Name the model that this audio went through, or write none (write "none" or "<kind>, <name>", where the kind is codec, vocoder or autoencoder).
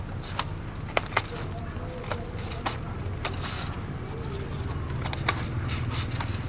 none